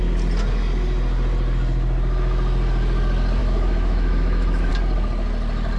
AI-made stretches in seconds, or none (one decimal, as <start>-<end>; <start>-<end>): 3.4-4.7

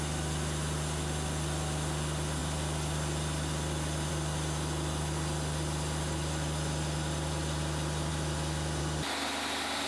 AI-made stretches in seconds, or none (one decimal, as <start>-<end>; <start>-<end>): none

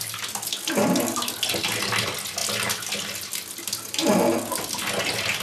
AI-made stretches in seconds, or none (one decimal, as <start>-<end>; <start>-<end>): none

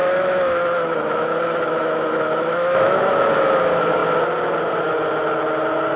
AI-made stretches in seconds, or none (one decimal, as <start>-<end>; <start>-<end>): 0.0-3.6

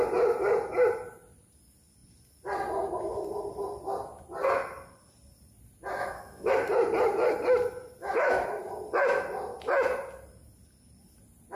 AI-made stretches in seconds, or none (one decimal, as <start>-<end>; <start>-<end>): 6.0-6.5; 8.0-8.6

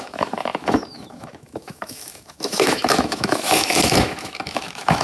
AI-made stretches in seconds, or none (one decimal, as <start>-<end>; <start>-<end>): 0.0-5.0

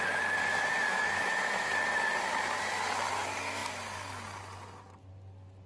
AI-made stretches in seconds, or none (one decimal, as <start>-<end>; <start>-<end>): 0.9-1.7

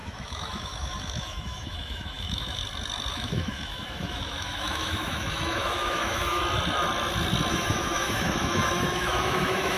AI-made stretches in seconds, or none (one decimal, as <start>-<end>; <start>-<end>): 0.0-2.6; 3.1-6.4; 7.5-9.8